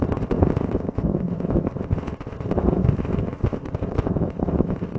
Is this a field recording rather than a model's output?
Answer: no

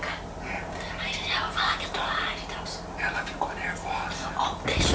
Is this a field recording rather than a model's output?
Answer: yes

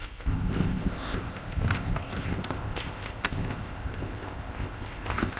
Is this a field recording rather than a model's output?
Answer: no